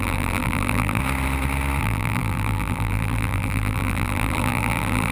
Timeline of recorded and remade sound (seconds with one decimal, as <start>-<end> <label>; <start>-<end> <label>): 0.0-1.0 remade; 1.0-1.8 recorded; 1.8-5.1 remade